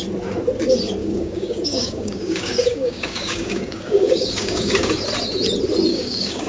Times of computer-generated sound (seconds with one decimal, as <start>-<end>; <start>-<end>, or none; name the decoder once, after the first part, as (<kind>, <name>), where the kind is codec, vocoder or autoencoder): 1.0-4.9 (codec, DAC); 5.9-6.5